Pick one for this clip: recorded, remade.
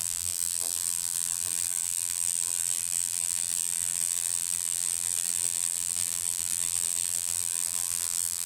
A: remade